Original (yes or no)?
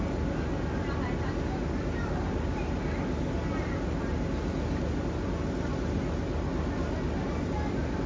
yes